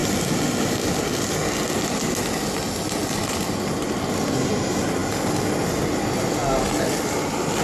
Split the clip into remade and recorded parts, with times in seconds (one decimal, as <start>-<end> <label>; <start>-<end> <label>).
0.0-7.6 recorded

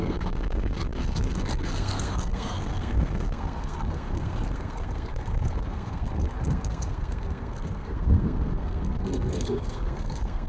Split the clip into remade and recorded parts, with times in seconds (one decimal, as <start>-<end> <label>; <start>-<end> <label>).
0.0-10.5 remade

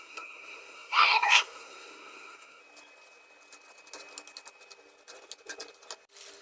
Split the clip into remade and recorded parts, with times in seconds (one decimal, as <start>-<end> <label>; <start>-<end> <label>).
0.0-2.6 remade; 2.6-6.4 recorded

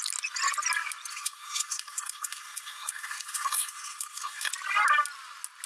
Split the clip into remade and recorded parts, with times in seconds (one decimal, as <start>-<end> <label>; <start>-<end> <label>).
0.0-1.1 recorded; 1.1-4.5 remade; 4.5-5.7 recorded

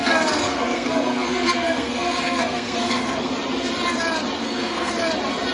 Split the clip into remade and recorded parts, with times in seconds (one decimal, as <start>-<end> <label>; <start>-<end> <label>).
0.0-3.3 remade; 3.3-4.4 recorded; 4.4-4.9 remade; 4.9-5.5 recorded

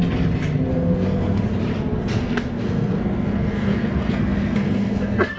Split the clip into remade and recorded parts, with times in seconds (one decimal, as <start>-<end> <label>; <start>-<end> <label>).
0.0-0.7 recorded; 0.7-1.4 remade; 1.4-2.1 recorded; 2.1-5.4 remade

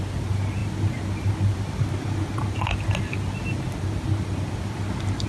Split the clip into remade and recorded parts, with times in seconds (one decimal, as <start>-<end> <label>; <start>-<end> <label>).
0.0-5.3 recorded